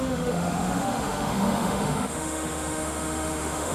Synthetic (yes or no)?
yes